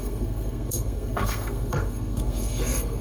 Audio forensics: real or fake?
fake